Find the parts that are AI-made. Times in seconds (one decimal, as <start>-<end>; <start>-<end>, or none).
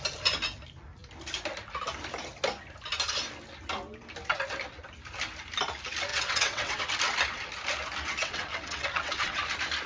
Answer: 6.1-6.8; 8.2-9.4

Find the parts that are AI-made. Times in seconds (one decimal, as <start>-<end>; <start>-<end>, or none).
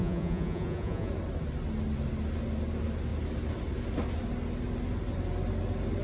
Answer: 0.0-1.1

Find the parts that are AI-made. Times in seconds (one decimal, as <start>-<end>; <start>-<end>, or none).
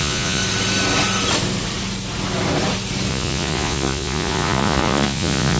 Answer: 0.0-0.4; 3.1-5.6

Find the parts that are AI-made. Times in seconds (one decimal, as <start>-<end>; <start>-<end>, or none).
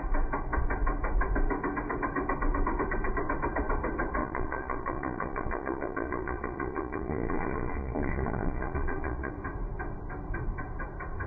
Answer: 4.2-9.3